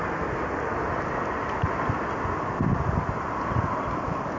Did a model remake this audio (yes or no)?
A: no